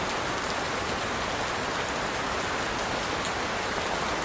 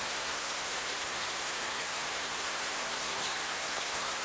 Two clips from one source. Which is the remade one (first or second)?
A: second